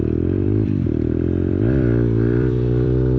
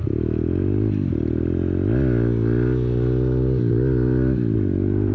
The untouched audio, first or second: second